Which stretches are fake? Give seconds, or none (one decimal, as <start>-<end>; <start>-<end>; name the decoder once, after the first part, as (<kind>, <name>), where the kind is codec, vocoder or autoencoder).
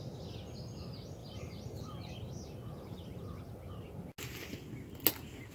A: 1.2-3.7 (vocoder, BigVGAN v2)